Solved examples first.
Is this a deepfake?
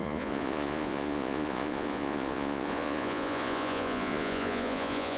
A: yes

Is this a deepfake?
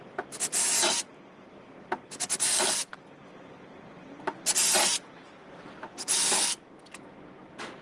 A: no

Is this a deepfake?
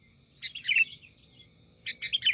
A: no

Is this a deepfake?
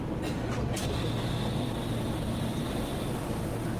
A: no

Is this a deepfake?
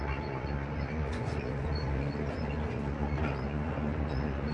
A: yes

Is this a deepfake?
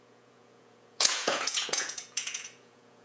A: yes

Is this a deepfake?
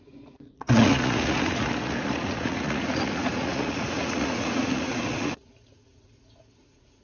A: yes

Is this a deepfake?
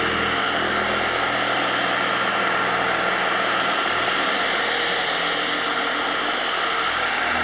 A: no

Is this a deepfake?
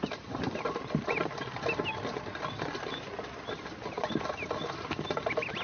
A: no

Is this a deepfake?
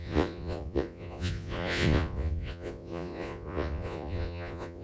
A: yes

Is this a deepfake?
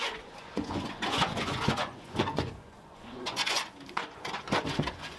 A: yes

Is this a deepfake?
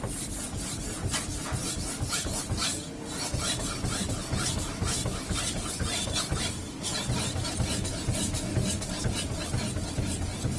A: no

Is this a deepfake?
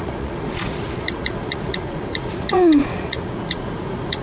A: yes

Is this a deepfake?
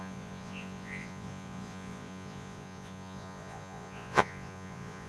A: yes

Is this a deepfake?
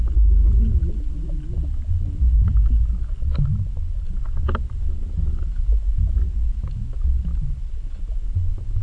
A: no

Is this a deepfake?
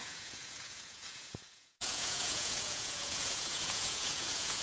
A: yes